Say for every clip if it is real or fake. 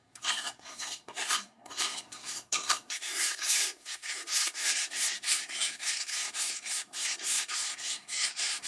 fake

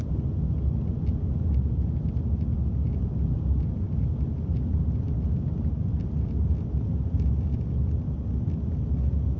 real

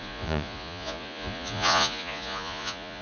fake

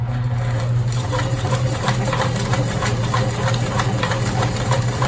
fake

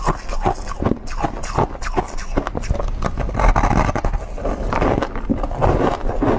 real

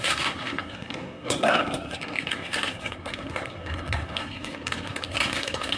fake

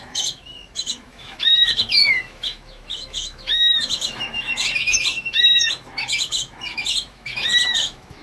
fake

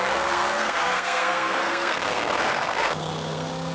fake